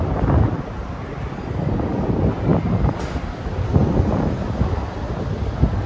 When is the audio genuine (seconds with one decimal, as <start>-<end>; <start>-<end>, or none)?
0.0-5.9